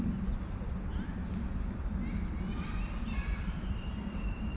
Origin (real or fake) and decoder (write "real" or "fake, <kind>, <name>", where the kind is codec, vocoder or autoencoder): fake, vocoder, BigVGAN v2